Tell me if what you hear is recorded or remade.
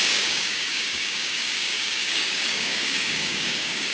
remade